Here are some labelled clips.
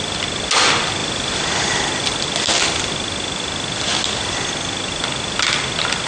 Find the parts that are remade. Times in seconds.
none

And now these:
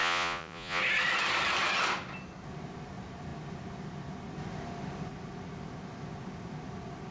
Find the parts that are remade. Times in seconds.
0.0-0.8